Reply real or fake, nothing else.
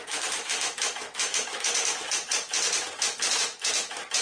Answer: fake